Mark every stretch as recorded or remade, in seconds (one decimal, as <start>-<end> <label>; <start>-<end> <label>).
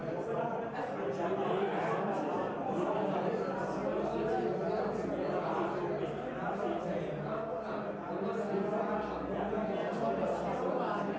0.0-0.8 remade; 0.8-1.7 recorded; 1.7-2.7 remade; 2.7-11.2 recorded